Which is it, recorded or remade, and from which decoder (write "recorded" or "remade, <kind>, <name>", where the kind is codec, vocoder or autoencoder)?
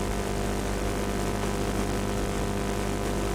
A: recorded